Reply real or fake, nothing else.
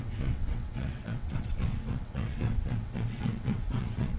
fake